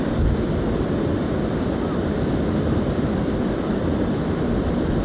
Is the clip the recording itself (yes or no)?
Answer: yes